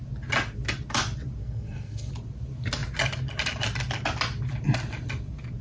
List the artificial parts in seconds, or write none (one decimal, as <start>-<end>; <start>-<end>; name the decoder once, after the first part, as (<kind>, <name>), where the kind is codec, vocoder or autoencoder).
1.4-2.1 (codec, SNAC)